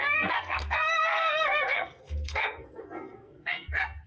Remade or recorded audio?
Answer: remade